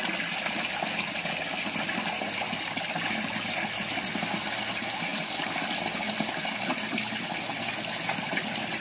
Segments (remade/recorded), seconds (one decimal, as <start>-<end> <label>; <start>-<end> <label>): 0.0-8.8 recorded